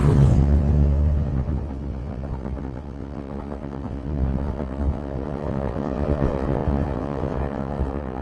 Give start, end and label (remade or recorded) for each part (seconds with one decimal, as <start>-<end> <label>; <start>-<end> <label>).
0.0-8.2 remade

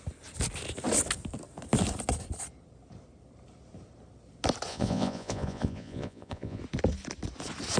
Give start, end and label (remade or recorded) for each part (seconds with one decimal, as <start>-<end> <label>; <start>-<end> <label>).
0.0-4.7 recorded; 4.7-6.6 remade; 6.6-7.8 recorded